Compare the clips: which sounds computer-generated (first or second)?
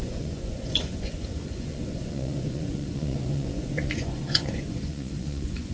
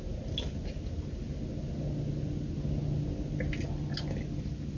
first